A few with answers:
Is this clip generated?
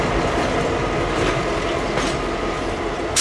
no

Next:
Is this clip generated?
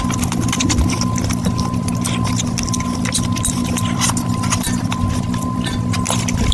no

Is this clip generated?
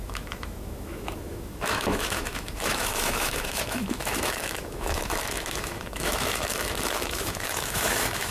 yes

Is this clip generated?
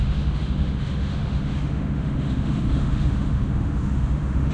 yes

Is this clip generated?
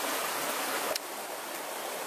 no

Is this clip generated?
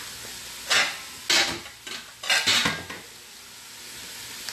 no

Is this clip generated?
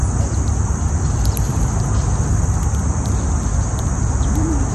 no